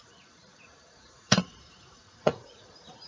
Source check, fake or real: fake